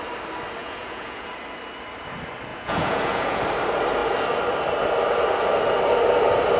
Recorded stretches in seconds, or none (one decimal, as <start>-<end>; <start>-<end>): 0.0-0.6; 1.3-2.5; 3.4-6.6